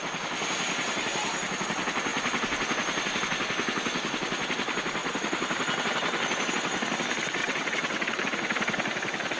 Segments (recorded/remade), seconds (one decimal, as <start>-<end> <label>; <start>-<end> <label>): 0.0-7.4 recorded; 7.4-8.2 remade; 8.2-9.4 recorded